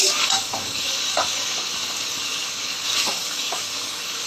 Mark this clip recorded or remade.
remade